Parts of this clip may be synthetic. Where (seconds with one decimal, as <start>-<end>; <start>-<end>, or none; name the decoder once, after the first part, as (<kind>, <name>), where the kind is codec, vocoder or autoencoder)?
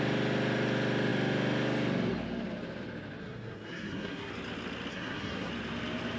3.2-4.3 (codec, SNAC); 4.9-5.5